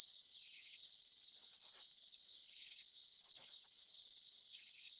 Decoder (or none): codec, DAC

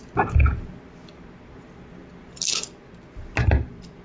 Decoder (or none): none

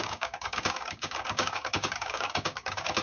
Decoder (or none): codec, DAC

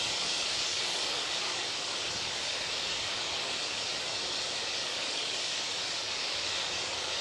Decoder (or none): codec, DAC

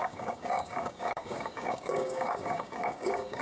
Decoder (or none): codec, DAC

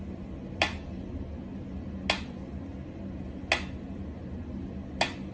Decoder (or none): none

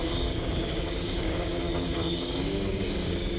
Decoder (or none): codec, DAC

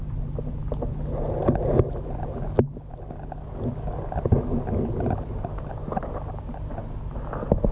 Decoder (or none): none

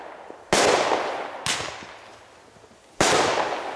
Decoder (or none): none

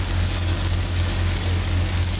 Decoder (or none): codec, DAC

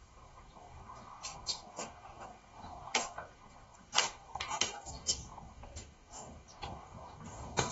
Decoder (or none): codec, DAC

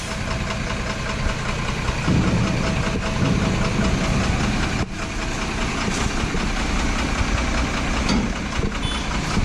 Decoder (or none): none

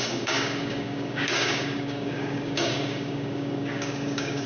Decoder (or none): codec, DAC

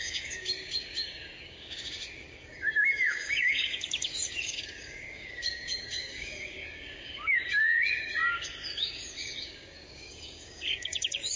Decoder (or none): codec, DAC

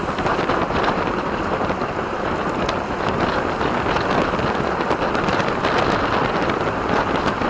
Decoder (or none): none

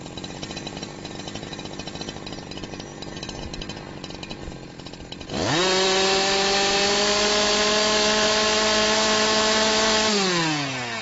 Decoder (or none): none